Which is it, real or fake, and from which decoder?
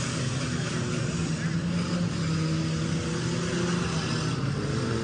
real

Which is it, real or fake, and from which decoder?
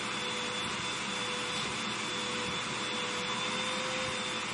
real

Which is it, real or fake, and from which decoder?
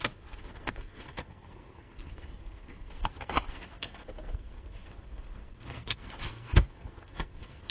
fake, codec, SNAC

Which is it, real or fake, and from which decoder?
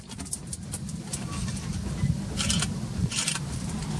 real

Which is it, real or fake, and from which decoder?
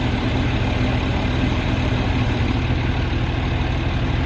real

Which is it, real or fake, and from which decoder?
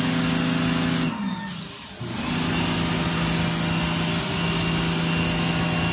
real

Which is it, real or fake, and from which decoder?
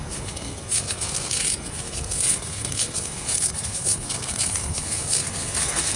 fake, codec, SNAC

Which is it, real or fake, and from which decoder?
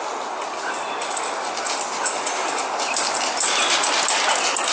real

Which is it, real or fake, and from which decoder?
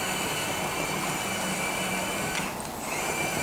real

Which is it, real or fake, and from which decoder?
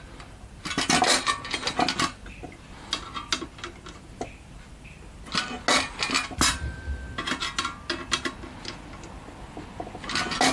real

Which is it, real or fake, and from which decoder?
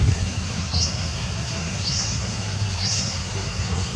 fake, codec, SNAC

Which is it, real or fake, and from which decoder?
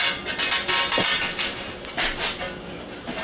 real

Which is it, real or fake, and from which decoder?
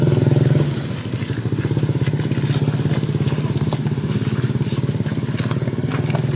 real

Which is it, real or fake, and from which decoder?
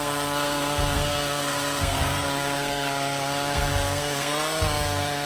fake, codec, SNAC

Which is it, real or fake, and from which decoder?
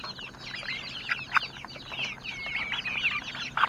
real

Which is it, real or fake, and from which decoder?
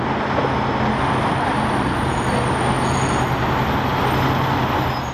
real